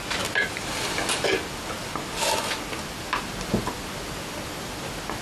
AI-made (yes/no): no